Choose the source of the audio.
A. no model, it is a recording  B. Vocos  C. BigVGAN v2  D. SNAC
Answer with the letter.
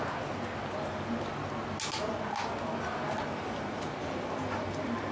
A